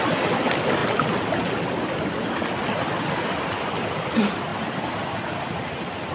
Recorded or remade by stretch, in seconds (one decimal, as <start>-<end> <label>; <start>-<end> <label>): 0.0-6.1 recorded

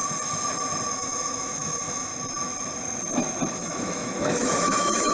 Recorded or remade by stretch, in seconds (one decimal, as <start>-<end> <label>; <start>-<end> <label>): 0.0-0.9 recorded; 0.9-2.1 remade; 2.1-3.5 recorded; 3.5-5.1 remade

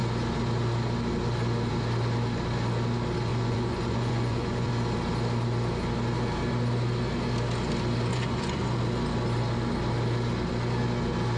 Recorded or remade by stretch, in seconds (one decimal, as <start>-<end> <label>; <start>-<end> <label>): 0.0-3.3 recorded; 3.3-4.7 remade; 4.7-8.1 recorded; 8.1-8.8 remade; 8.8-11.4 recorded

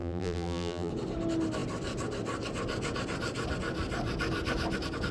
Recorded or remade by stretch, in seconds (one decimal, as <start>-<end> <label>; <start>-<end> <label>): 0.0-0.9 remade; 0.9-5.1 recorded

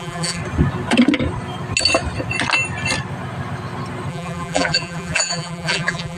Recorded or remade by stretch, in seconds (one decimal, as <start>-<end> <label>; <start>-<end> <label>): 0.0-0.4 remade; 0.4-4.1 recorded; 4.1-6.2 remade

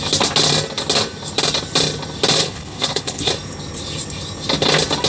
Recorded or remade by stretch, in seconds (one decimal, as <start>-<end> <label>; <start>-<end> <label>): 0.0-2.4 recorded; 2.4-3.3 remade; 3.3-5.1 recorded

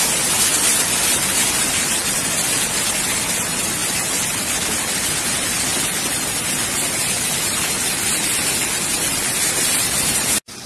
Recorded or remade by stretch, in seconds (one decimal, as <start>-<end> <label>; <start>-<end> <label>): 0.0-10.7 recorded

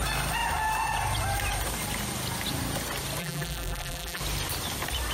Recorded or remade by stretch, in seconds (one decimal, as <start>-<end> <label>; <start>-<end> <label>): 0.0-3.2 recorded; 3.2-4.2 remade; 4.2-5.1 recorded